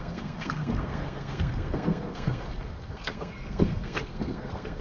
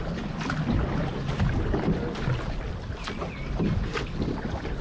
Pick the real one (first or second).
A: second